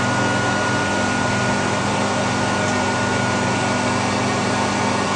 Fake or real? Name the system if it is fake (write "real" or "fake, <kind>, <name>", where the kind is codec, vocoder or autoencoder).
real